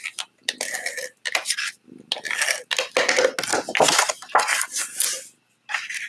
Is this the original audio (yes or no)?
yes